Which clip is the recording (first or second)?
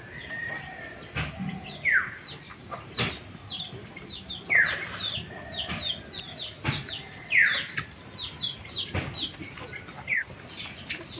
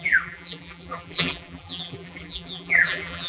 first